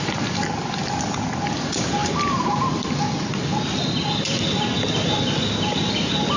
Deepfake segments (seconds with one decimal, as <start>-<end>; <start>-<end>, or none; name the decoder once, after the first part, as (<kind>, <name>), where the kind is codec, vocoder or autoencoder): none